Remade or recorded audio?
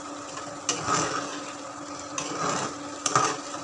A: recorded